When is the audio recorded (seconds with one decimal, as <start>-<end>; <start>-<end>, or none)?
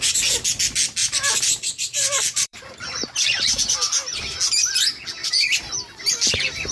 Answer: 0.0-1.0; 3.7-5.2; 5.7-6.7